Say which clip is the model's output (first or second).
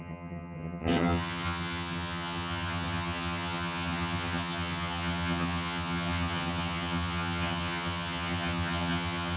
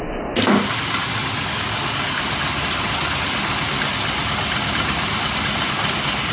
first